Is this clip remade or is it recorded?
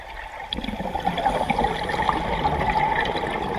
recorded